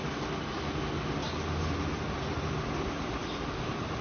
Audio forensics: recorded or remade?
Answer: recorded